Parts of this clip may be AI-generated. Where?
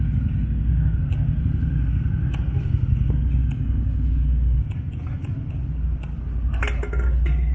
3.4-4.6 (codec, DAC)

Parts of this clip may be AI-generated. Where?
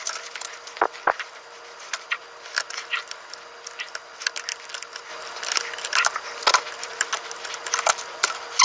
none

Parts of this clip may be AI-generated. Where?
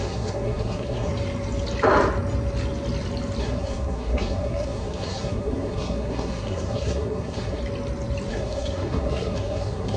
0.0-1.1 (codec, SNAC); 3.4-7.6; 8.3-10.0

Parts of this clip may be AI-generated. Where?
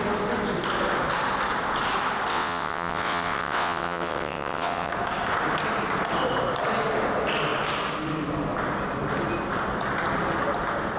2.3-4.9 (vocoder, WaveNeXt)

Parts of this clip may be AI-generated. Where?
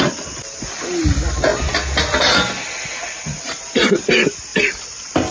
4.5-5.3 (vocoder, BigVGAN v2)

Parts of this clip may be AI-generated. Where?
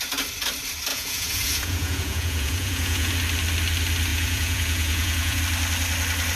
0.9-3.1 (vocoder, Vocos); 4.1-5.4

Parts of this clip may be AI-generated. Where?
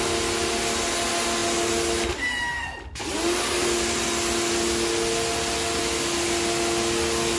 none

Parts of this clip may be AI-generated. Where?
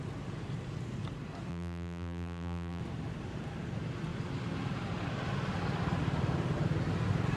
1.5-2.8 (vocoder, BigVGAN v2)